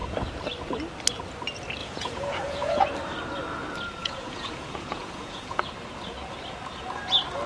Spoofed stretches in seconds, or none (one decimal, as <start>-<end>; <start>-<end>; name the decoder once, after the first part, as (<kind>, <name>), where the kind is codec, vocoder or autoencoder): 1.8-2.8 (vocoder, Vocos); 4.0-5.6